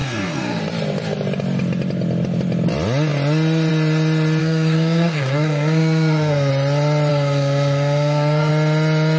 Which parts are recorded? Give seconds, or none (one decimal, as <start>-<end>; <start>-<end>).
0.6-4.4; 6.5-7.1; 8.5-9.2